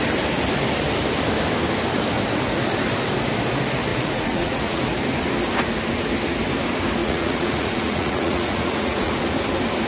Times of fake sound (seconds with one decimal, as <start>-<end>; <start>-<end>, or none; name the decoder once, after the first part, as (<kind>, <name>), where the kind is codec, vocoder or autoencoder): 3.9-4.8 (vocoder, Vocos); 7.0-9.1